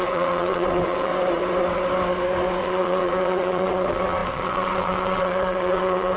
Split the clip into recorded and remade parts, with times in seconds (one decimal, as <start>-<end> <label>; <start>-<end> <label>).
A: 0.0-1.1 remade; 1.1-2.6 recorded; 2.6-6.2 remade